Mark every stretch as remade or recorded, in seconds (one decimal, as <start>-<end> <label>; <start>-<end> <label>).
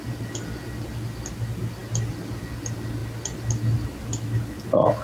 0.0-5.0 recorded